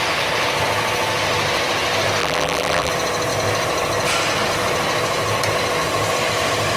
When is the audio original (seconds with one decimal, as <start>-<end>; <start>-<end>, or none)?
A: 0.0-2.2; 2.9-6.8